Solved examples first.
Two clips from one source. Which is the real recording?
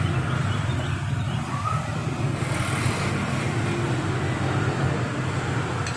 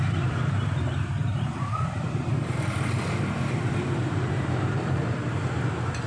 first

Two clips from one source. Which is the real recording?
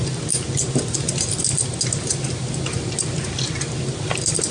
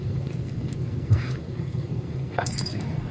first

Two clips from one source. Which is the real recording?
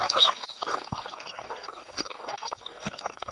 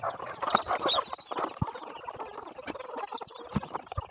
second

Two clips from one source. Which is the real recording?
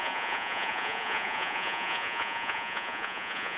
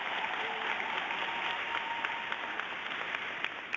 second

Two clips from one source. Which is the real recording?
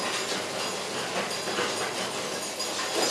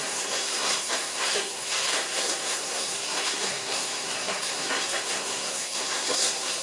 first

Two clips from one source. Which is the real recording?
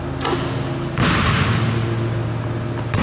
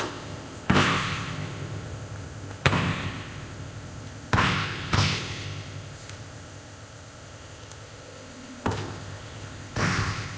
first